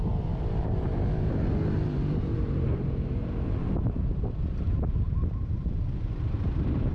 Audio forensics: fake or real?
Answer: fake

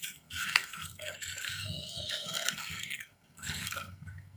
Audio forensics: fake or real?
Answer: fake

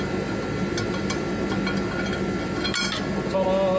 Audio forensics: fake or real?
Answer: real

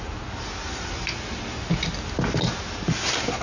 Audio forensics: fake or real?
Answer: real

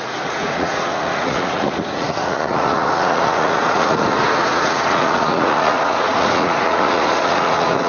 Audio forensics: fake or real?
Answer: fake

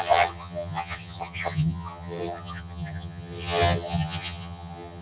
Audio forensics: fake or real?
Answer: fake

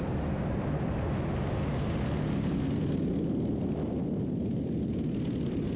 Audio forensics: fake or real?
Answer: real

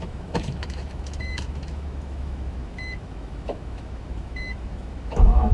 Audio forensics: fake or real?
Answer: fake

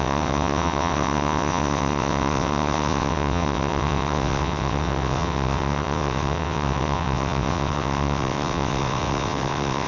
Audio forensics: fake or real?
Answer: fake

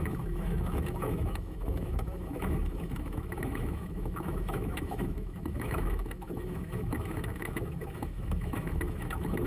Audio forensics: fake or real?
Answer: fake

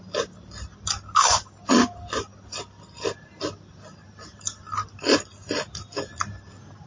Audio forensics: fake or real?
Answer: real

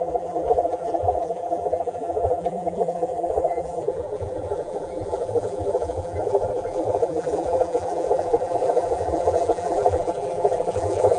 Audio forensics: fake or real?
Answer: fake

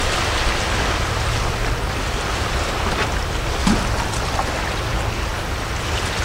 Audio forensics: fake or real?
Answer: real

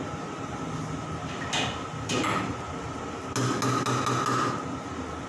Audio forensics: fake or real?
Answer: real